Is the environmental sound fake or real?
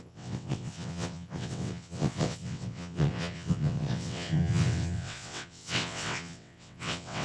fake